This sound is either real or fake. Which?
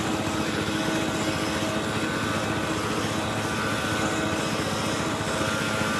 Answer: real